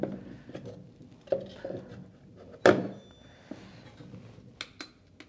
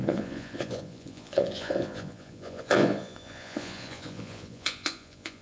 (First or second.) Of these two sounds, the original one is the first